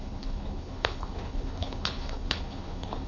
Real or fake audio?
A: fake